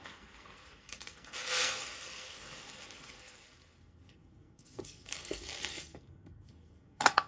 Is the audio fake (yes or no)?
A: yes